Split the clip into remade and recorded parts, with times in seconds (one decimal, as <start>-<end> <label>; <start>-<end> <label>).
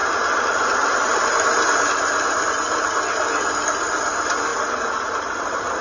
0.0-5.8 recorded